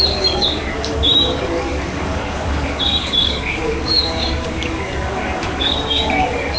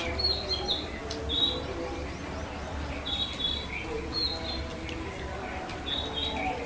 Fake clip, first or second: first